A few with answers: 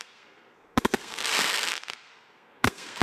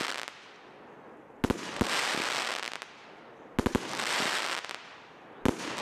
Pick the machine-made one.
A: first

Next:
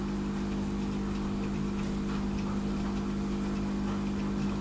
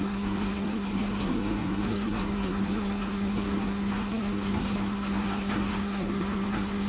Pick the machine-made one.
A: second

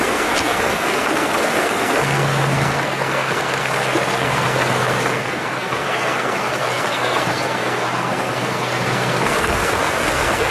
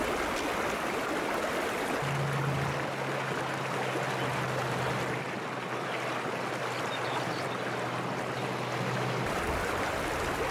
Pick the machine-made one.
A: first